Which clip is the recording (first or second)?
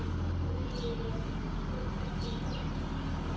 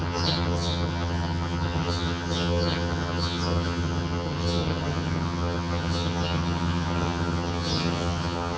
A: first